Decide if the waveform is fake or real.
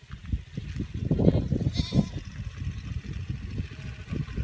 real